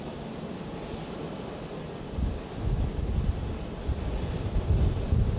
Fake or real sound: real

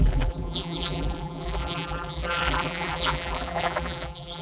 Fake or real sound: fake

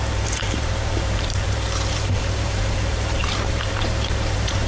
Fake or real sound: fake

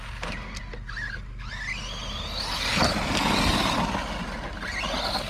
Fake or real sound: real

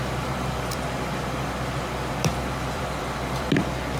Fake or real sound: fake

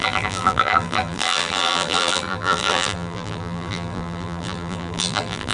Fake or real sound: fake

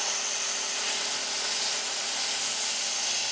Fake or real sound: real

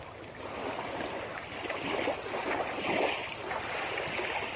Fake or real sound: real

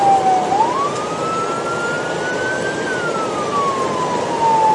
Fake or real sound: real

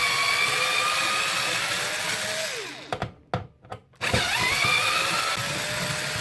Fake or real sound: real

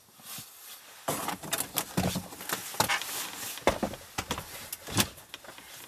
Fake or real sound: real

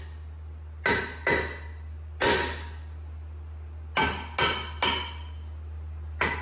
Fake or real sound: real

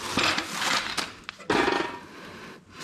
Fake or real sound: real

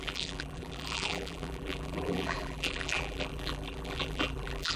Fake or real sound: fake